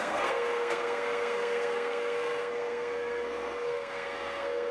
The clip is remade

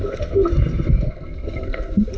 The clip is remade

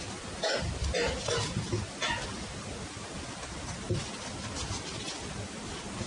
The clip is recorded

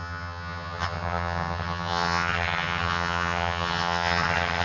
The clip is remade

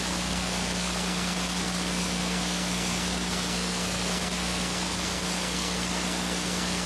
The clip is remade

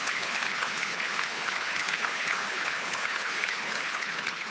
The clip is remade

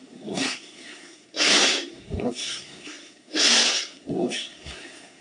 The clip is remade